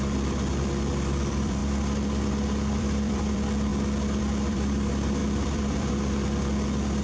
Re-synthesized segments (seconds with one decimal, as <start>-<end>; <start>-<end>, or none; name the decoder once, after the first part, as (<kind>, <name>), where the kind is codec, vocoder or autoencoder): 0.0-1.6 (vocoder, BigVGAN v2); 2.8-3.7; 4.2-7.0